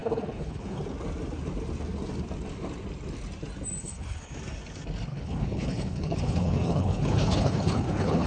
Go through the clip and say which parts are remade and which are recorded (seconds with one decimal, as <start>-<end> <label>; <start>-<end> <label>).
0.0-0.8 remade; 0.8-3.8 recorded; 3.8-4.3 remade; 4.3-5.1 recorded; 5.1-8.3 remade